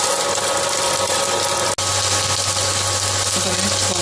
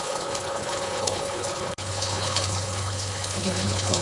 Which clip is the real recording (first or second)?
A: first